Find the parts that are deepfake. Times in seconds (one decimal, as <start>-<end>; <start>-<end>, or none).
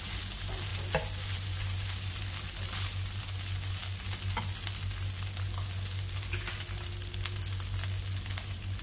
none